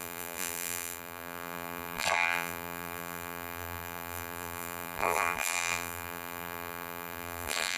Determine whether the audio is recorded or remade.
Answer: remade